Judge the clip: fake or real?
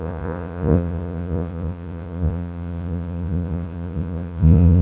fake